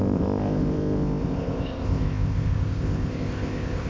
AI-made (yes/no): yes